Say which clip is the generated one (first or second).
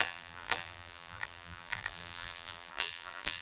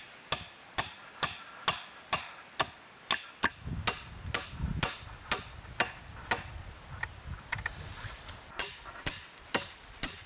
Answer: first